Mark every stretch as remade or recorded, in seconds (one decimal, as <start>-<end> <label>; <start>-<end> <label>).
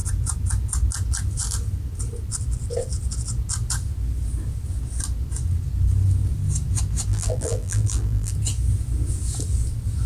0.0-7.1 recorded; 7.1-8.3 remade; 8.3-10.1 recorded